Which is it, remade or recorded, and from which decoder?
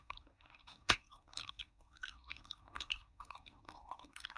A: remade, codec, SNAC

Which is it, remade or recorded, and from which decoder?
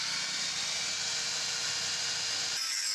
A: recorded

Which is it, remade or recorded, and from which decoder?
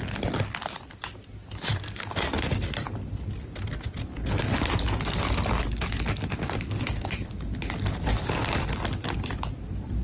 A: recorded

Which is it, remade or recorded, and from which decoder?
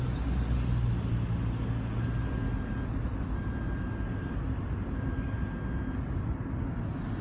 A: recorded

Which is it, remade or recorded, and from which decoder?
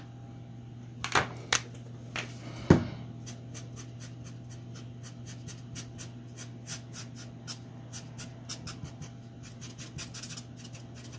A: recorded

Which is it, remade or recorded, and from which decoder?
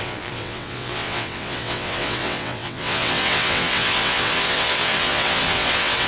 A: remade, vocoder, WaveNeXt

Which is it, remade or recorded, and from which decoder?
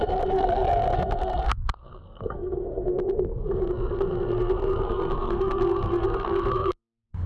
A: remade, codec, SNAC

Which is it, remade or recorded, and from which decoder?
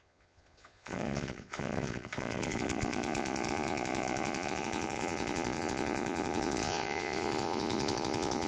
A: remade, vocoder, Vocos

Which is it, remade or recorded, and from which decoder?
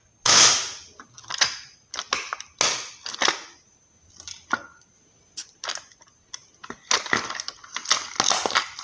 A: recorded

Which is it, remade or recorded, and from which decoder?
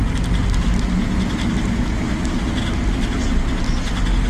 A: recorded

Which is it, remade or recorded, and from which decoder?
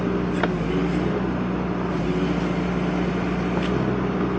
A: recorded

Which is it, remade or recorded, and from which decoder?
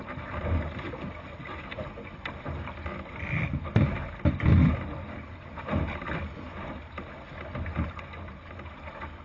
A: recorded